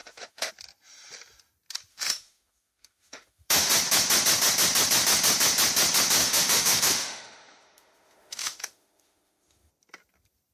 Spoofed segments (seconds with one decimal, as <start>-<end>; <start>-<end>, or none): 0.0-0.5; 1.9-3.7; 6.2-9.7